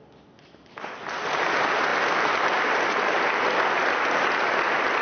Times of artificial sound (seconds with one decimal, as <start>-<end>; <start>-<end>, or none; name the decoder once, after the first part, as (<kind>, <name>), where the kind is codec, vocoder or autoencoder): none